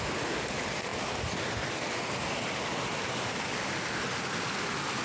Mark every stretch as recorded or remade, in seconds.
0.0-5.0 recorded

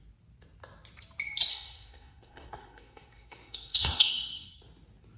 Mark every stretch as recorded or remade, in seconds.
0.0-1.5 recorded; 1.5-4.6 remade; 4.6-5.2 recorded

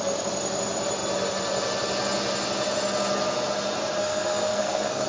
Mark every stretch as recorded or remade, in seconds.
0.0-4.0 recorded; 4.0-5.1 remade

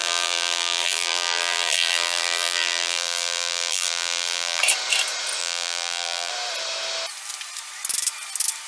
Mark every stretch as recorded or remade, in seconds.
0.0-4.6 remade; 4.6-5.4 recorded; 5.4-6.3 remade; 6.3-8.7 recorded

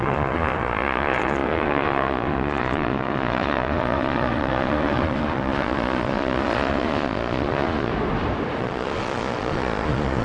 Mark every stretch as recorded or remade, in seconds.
0.0-7.9 remade; 7.9-8.6 recorded; 8.6-10.2 remade